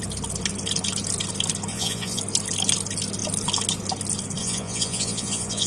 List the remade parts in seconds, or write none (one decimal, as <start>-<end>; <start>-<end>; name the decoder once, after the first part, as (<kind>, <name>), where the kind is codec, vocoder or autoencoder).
1.7-2.2 (vocoder, Vocos); 4.4-5.7